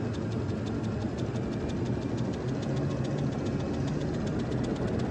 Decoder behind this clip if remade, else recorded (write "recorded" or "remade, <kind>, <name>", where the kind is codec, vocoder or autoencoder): recorded